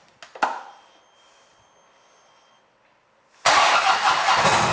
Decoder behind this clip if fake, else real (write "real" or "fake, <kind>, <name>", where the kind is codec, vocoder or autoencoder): real